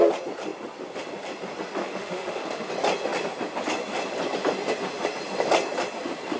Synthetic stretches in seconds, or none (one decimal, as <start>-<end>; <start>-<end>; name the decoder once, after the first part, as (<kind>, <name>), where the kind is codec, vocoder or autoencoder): 1.8-2.7 (autoencoder, DAC-VAE)